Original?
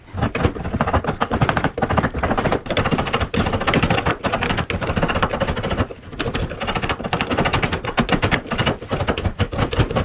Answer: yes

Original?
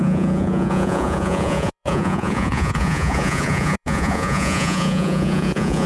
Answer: no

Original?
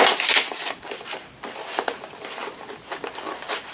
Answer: yes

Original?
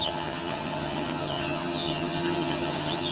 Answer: no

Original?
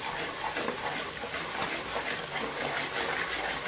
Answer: yes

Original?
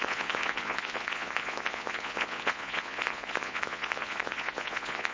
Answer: no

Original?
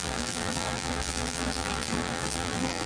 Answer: no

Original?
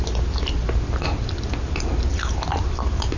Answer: yes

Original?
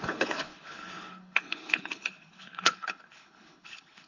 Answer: no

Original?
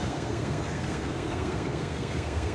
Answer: no